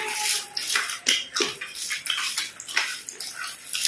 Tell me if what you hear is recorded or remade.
recorded